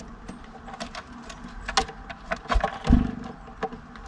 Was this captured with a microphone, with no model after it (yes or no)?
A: yes